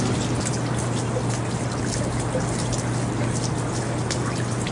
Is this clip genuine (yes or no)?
yes